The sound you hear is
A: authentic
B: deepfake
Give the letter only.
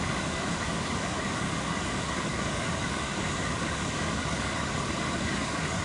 B